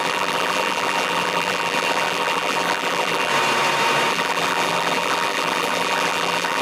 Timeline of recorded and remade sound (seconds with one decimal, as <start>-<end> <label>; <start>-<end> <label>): 0.0-3.3 remade; 3.3-4.1 recorded; 4.1-6.6 remade